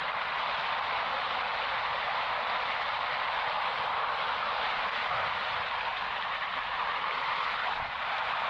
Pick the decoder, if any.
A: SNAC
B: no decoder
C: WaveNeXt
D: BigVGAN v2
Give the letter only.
B